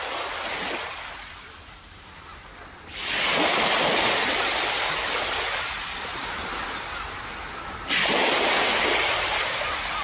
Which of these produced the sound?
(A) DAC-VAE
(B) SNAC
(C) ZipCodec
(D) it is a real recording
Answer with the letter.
D